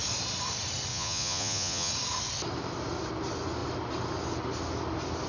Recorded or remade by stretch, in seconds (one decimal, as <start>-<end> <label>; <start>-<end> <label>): 0.0-0.9 recorded; 0.9-1.9 remade; 1.9-5.3 recorded